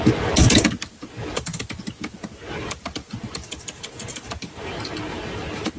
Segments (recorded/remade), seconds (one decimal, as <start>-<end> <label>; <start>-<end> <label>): 0.0-5.8 recorded